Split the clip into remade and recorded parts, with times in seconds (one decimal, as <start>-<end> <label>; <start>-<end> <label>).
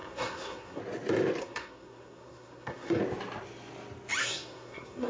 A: 0.0-0.8 remade; 0.8-1.4 recorded; 1.4-3.0 remade; 3.0-4.2 recorded; 4.2-5.1 remade